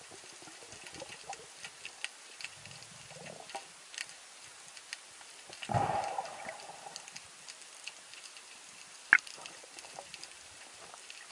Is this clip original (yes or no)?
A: yes